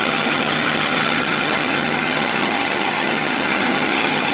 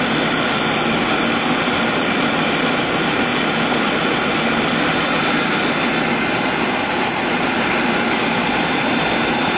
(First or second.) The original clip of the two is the second